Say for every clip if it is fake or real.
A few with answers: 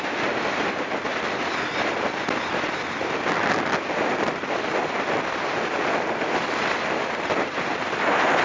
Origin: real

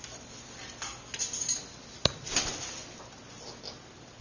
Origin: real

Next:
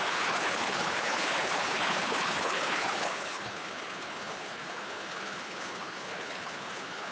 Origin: fake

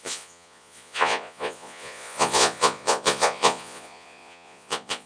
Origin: fake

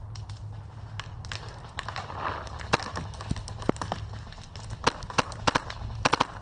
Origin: real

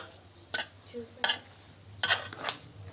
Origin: real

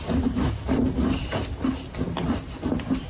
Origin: real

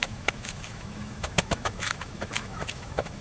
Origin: fake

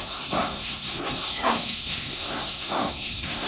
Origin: fake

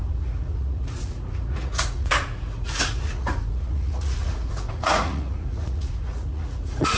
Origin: fake